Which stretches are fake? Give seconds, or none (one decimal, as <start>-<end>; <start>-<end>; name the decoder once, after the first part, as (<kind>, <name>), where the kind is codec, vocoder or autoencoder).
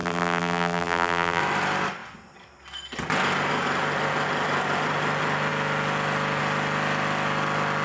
0.0-1.4 (vocoder, BigVGAN v2)